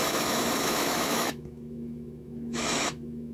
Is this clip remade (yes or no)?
yes